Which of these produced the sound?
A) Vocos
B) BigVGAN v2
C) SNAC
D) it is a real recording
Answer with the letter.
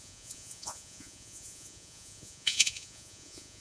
A